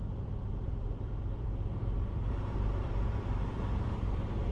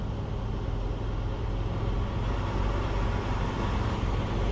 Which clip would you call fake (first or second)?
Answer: first